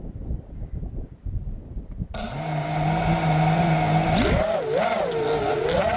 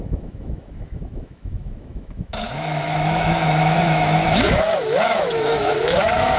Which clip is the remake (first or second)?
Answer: second